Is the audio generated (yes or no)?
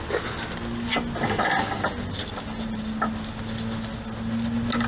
no